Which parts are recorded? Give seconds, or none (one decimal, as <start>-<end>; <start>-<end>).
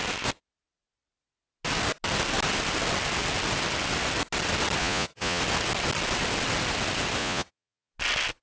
0.0-4.8; 5.4-7.2; 7.9-8.4